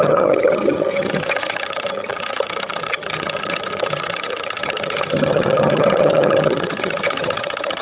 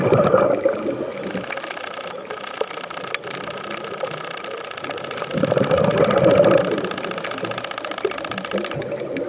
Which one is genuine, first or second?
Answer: second